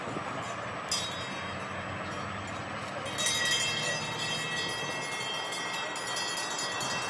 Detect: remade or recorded recorded